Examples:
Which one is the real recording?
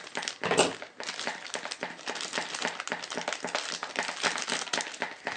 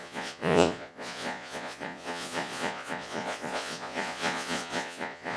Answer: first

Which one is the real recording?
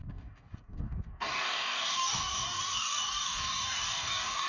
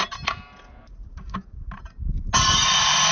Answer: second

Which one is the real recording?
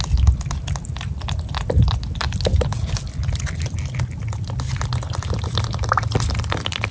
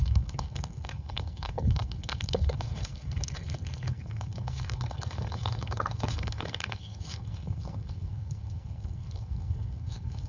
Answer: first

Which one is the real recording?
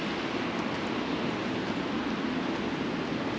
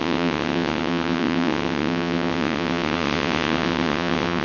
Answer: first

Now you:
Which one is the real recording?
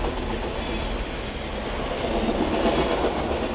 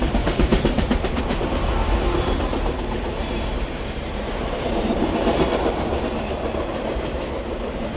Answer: first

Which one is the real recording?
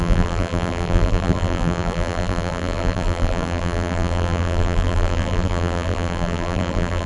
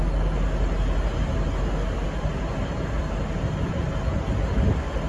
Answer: second